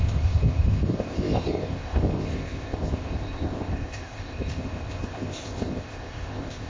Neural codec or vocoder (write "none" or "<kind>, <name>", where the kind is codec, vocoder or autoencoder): codec, ZipCodec